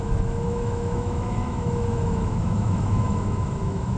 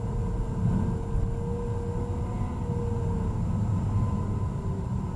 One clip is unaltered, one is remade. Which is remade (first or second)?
first